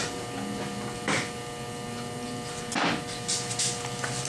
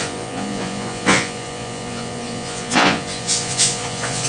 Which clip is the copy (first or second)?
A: second